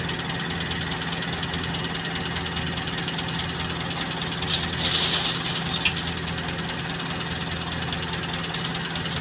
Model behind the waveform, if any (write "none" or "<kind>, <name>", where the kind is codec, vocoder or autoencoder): none